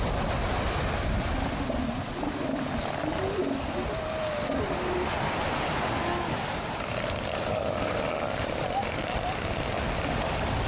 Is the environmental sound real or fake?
real